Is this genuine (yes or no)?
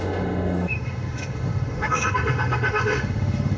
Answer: no